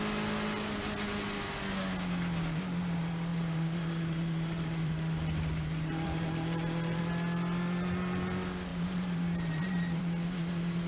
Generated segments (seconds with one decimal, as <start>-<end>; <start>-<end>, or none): 3.3-7.0; 8.7-10.0